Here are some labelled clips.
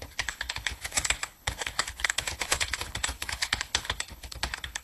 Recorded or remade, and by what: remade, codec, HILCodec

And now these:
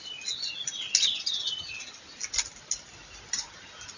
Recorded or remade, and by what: recorded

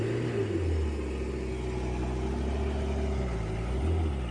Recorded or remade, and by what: recorded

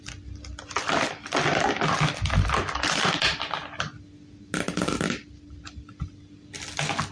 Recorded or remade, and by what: recorded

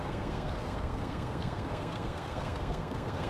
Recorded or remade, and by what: remade, codec, SNAC